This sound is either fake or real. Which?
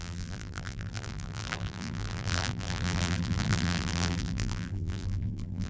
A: fake